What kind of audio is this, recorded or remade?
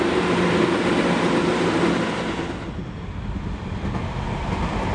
recorded